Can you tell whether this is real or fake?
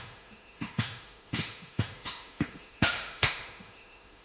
fake